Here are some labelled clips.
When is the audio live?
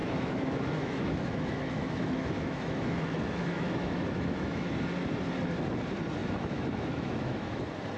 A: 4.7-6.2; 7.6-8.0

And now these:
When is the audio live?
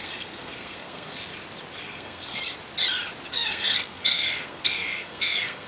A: 1.3-1.8; 2.4-3.3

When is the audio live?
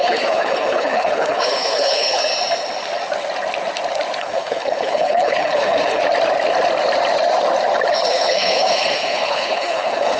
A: 2.2-4.2; 6.0-8.1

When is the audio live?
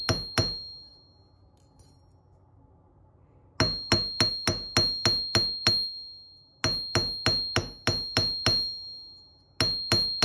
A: 0.0-10.2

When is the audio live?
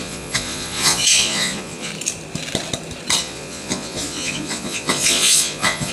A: 1.9-3.2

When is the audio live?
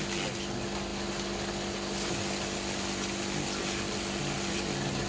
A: 0.0-5.1